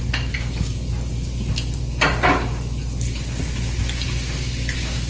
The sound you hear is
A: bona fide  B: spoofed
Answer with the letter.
A